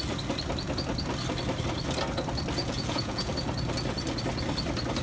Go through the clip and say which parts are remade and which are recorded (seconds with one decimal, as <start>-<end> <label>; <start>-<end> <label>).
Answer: 0.0-2.6 recorded; 2.6-3.3 remade; 3.3-5.0 recorded